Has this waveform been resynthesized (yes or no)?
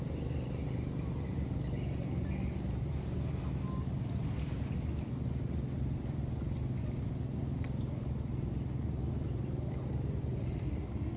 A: no